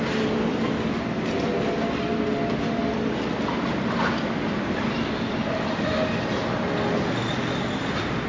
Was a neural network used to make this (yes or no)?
no